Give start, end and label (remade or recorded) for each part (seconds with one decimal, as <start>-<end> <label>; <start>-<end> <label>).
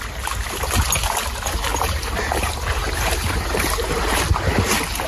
0.0-1.7 recorded; 1.7-4.2 remade; 4.2-5.1 recorded